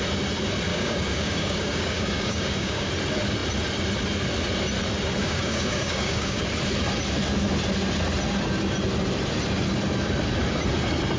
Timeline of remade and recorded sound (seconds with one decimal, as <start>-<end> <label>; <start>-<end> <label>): 0.0-0.7 recorded; 0.7-2.9 remade; 2.9-5.2 recorded; 5.2-6.4 remade; 6.4-11.2 recorded